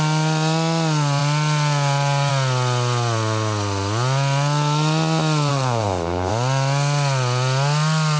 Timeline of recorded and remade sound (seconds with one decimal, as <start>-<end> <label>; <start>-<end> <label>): 0.0-5.5 recorded; 5.5-6.3 remade; 6.3-8.2 recorded